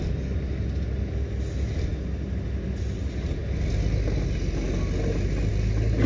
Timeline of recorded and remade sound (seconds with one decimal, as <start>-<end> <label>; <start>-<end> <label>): 0.0-6.1 recorded